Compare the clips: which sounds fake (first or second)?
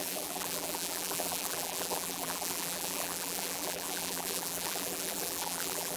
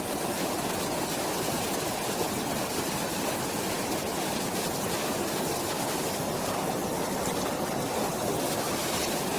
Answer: first